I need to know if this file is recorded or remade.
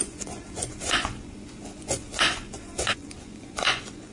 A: remade